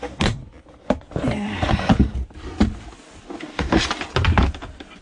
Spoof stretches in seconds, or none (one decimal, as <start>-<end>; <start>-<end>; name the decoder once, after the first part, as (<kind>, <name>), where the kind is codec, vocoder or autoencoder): 0.0-0.4 (codec, DAC); 3.4-3.8